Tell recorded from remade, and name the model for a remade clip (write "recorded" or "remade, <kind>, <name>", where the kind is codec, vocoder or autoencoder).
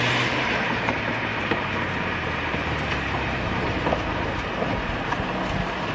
remade, vocoder, BigVGAN v2